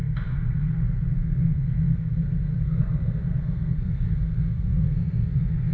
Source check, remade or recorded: remade